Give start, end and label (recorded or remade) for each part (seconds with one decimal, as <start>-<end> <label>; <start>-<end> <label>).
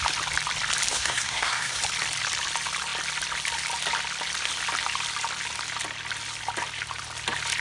0.0-0.9 recorded; 0.9-1.8 remade; 1.8-7.6 recorded